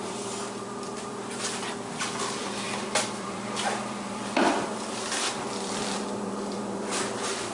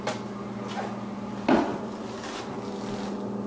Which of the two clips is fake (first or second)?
first